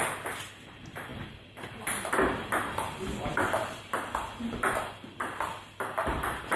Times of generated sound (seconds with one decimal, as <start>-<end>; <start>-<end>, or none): none

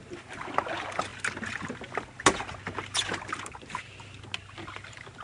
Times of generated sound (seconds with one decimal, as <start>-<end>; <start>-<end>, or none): none

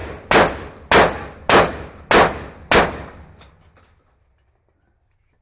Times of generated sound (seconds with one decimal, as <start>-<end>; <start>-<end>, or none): none

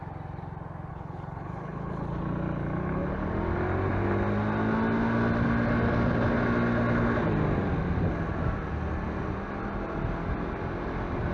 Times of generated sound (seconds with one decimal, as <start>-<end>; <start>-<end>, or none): 0.9-2.2

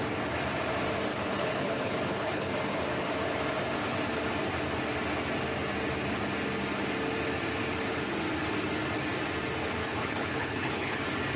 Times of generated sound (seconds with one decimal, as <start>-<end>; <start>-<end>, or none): 1.1-2.5; 9.8-11.0

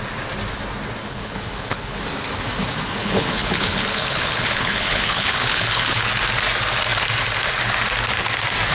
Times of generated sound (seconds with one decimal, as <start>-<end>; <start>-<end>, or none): 1.0-2.0; 3.0-6.1